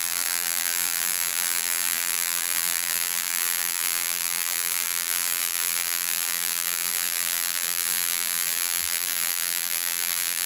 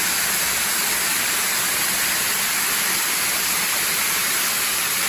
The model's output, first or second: first